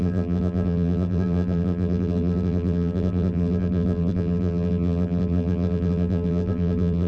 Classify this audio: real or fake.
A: fake